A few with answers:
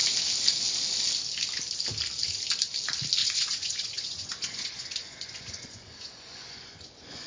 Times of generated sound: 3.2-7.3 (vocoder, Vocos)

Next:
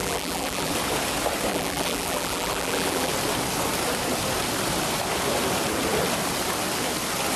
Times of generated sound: 0.0-0.7 (vocoder, BigVGAN v2); 1.5-3.1